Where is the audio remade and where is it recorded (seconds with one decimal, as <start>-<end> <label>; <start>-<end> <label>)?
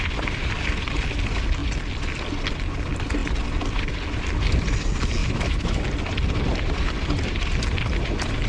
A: 0.0-5.2 recorded; 5.2-5.8 remade; 5.8-8.5 recorded